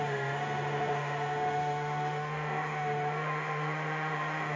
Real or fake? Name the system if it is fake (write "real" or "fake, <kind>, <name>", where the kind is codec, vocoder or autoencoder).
fake, autoencoder, DAC-VAE